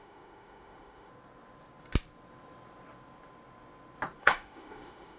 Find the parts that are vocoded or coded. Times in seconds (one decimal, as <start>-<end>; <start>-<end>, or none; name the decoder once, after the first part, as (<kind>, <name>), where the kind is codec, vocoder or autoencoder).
0.0-1.1 (autoencoder, DAC-VAE); 4.2-5.2